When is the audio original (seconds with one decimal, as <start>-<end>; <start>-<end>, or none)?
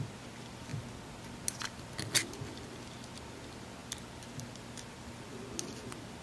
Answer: 0.0-6.2